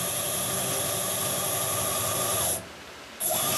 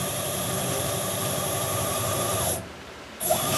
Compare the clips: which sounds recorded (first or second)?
first